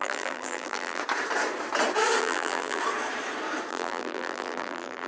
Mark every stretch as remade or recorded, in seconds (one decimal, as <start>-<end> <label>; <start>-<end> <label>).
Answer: 0.0-1.0 remade; 1.0-2.2 recorded; 2.2-2.8 remade; 2.8-3.7 recorded; 3.7-5.1 remade